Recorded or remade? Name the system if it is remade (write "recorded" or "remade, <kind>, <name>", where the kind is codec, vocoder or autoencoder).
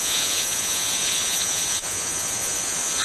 remade, vocoder, Vocos